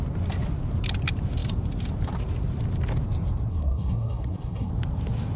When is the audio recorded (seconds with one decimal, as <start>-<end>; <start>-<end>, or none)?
0.0-3.5; 4.7-5.4